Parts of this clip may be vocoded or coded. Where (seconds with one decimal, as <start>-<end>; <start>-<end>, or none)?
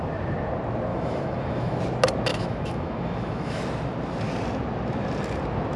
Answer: 0.9-1.8; 2.3-3.6